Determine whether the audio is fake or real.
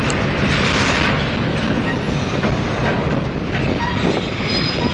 real